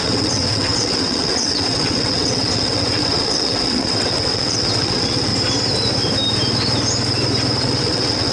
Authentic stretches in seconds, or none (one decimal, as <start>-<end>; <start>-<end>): 5.3-7.6